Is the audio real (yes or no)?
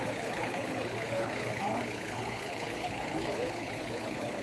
no